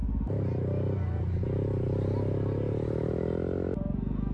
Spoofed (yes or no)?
no